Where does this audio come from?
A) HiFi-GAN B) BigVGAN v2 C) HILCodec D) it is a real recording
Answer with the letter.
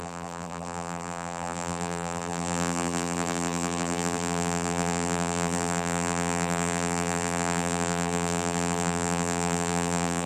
B